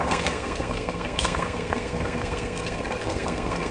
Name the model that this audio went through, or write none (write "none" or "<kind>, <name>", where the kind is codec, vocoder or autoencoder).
codec, SNAC